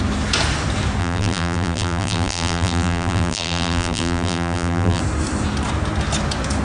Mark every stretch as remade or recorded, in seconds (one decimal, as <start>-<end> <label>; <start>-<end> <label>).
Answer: 0.0-1.0 recorded; 1.0-5.0 remade; 5.0-6.6 recorded